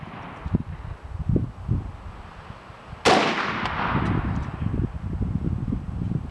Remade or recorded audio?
recorded